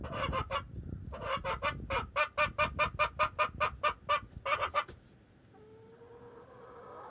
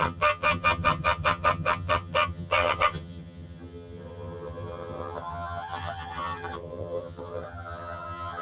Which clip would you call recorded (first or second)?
first